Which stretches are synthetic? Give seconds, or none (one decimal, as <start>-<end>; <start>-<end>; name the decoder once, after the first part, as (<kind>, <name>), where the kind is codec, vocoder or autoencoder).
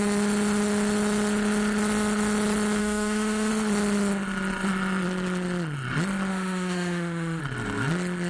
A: 2.8-3.5 (autoencoder, DAC-VAE); 6.3-7.4